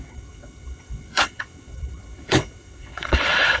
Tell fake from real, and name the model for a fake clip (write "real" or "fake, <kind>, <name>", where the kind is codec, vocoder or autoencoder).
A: fake, vocoder, WaveNeXt